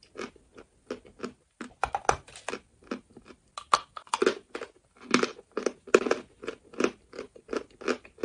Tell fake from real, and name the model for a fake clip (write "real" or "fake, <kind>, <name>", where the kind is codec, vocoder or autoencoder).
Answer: real